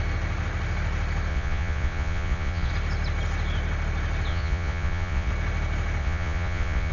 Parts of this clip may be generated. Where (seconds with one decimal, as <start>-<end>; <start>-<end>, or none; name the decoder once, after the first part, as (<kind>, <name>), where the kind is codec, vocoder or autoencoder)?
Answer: 1.3-2.7 (vocoder, Vocos); 4.3-5.3; 6.0-6.9